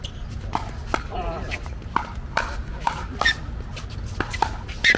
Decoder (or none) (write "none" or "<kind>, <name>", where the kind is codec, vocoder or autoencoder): none